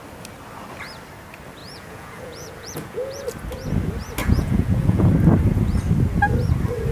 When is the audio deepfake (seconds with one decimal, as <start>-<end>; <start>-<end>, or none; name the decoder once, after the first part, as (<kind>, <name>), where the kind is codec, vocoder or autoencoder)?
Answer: 1.6-3.2 (vocoder, Vocos); 4.2-5.1